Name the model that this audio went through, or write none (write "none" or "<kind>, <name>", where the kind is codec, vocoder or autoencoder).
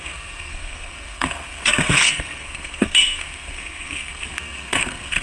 codec, SNAC